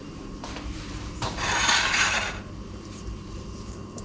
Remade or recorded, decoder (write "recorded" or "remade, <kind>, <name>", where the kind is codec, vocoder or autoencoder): remade, vocoder, BigVGAN v2